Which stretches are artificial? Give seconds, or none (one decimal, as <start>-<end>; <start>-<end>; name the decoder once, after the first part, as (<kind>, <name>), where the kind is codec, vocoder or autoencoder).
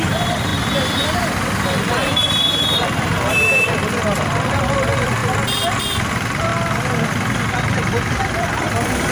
0.0-0.5 (vocoder, BigVGAN v2); 1.8-5.2; 6.1-6.5; 7.1-9.1